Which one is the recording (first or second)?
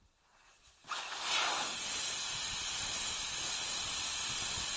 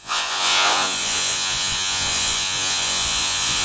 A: first